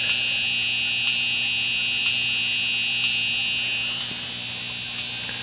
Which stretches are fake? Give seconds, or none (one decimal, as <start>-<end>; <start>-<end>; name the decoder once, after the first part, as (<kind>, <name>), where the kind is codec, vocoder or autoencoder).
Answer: none